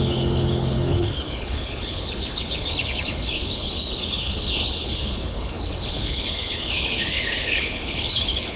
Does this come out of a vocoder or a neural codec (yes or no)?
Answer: yes